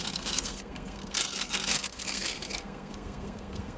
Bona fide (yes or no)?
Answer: no